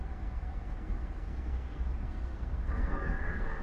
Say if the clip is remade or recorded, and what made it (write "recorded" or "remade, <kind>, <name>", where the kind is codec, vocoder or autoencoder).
remade, codec, SNAC